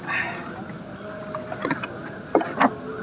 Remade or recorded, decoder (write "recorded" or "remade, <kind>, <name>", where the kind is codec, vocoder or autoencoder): recorded